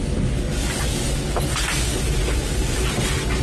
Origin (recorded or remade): recorded